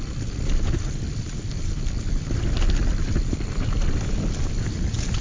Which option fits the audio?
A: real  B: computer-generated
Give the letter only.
A